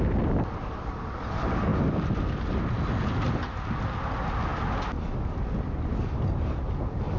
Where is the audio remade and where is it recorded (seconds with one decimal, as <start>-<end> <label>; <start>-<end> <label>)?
0.0-7.2 recorded